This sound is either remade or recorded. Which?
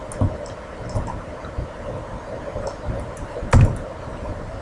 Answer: recorded